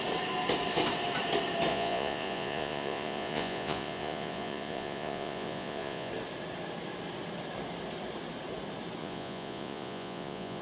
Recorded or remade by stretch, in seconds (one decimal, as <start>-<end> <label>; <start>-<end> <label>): 0.0-1.7 recorded; 1.7-6.1 remade; 6.1-9.0 recorded; 9.0-10.6 remade